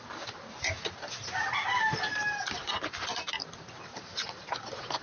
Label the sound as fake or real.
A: real